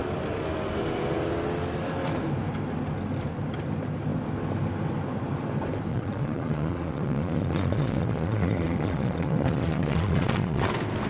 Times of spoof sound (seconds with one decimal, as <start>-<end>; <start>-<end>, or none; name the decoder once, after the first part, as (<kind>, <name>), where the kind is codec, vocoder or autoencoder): 5.9-10.7 (vocoder, Vocos)